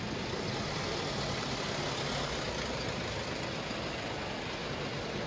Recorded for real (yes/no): yes